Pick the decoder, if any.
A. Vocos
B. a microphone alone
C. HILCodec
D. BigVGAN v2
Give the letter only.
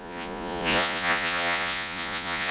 A